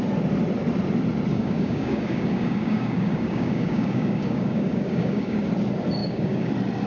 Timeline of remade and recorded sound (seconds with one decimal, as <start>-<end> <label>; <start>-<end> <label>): 0.0-1.3 recorded; 1.3-5.4 remade; 5.4-6.0 recorded; 6.0-6.5 remade; 6.5-6.9 recorded